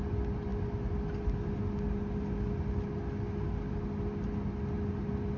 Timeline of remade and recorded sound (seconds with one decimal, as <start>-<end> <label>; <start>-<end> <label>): 0.0-5.4 recorded